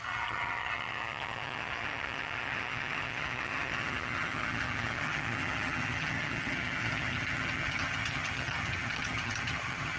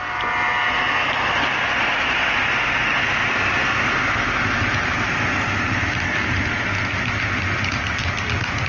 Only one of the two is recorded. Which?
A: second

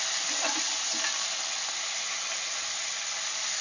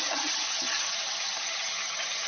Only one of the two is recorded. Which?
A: first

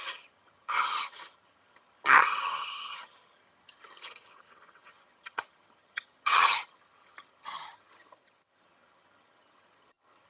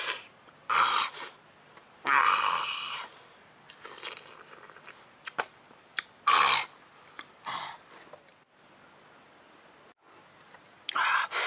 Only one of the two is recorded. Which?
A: second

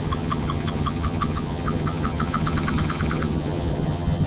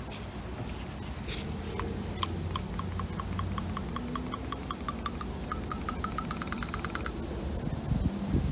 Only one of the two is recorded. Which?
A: second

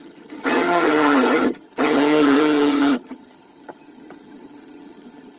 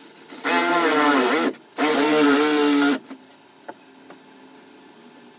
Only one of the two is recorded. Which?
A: second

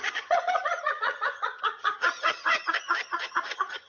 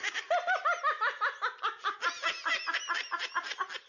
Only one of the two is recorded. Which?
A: second